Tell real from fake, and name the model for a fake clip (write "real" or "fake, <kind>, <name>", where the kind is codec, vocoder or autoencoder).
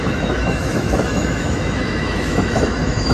fake, autoencoder, DAC-VAE